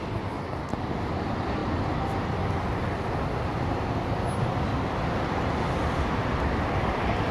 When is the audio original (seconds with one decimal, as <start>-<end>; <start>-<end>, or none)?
0.0-7.3